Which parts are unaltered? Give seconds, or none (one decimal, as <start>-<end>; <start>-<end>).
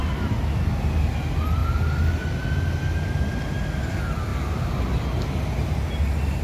0.5-6.4